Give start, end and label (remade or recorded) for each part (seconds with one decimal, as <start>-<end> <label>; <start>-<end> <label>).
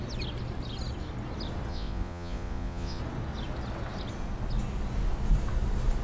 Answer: 0.0-1.7 recorded; 1.7-3.0 remade; 3.0-6.0 recorded